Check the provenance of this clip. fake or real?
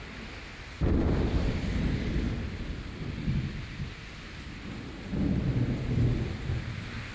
real